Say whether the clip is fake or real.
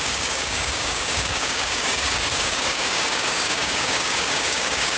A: fake